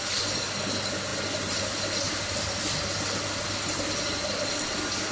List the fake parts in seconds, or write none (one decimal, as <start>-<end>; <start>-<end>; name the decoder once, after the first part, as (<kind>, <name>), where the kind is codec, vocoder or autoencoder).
none